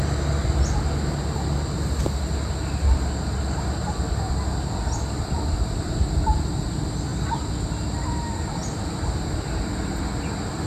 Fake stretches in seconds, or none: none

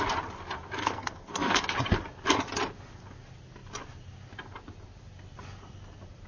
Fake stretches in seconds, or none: 0.8-1.6

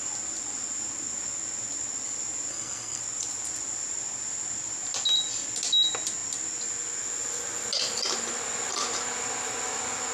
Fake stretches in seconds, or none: 2.5-3.0

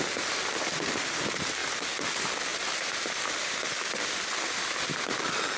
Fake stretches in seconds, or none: none

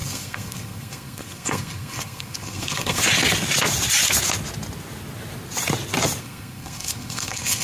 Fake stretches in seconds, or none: 0.0-3.0; 6.2-7.6